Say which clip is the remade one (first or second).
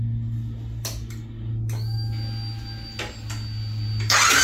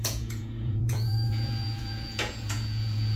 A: second